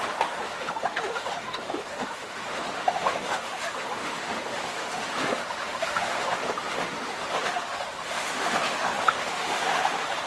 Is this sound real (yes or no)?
no